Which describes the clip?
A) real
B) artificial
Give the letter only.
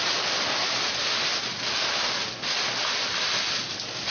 A